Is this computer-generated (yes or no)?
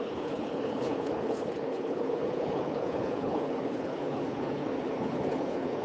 yes